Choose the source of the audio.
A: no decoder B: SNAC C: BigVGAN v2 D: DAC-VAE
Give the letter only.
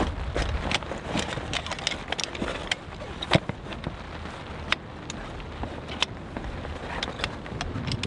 A